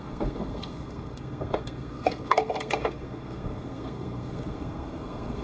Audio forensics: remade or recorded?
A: remade